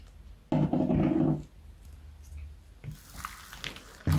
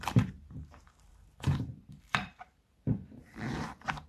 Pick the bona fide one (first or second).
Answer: first